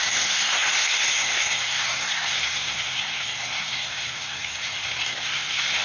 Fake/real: fake